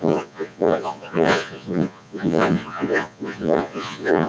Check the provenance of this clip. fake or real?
fake